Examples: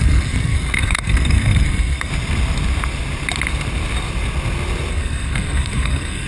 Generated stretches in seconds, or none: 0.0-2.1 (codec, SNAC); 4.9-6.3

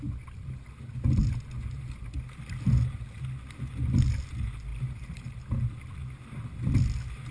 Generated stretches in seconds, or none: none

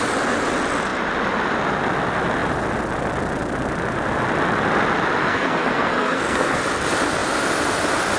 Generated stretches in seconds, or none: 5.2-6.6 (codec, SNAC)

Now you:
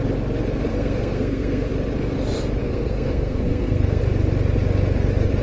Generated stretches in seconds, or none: 0.7-1.7 (codec, SNAC); 2.6-4.0

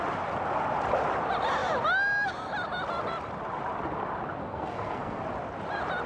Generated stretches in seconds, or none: 4.4-5.2 (codec, SNAC)

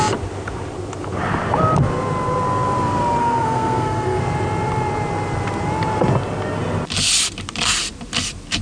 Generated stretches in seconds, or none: 3.2-4.2 (codec, SNAC)

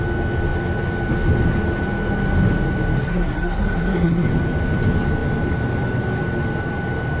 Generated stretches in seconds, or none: 3.0-4.3 (codec, SNAC)

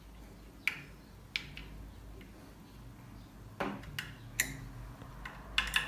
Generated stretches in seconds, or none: none